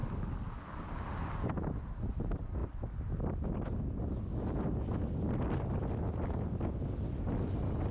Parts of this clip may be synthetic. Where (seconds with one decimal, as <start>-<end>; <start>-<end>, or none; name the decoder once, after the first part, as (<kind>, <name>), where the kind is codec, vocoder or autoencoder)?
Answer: none